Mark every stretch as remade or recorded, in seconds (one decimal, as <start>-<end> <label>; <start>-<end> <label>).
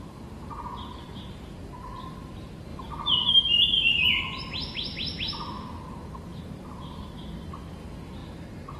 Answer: 0.0-2.7 recorded; 2.7-3.3 remade; 3.3-6.3 recorded; 6.3-7.1 remade; 7.1-8.8 recorded